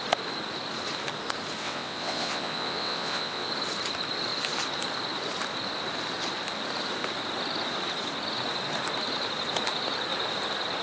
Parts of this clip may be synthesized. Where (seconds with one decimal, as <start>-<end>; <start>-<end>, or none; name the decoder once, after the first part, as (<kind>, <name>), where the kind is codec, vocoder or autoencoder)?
1.6-3.5 (vocoder, WaveNeXt)